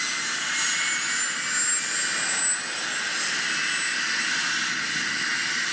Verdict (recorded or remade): recorded